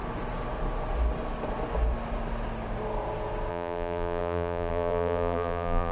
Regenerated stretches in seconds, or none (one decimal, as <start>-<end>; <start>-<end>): 3.5-5.9